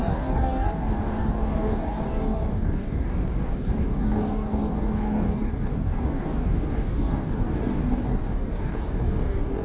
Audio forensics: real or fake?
fake